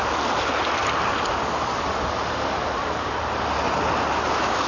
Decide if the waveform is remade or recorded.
recorded